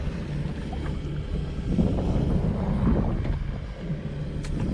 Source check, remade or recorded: recorded